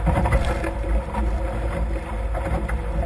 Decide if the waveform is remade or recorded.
recorded